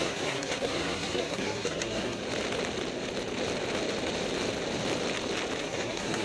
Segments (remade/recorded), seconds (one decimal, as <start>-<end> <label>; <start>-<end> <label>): 0.0-2.2 remade; 2.2-5.6 recorded; 5.6-6.2 remade